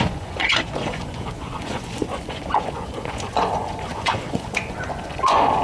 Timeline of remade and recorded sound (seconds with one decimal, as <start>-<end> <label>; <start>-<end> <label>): 0.0-5.6 remade